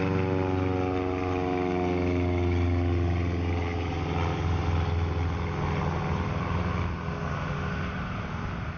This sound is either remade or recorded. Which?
recorded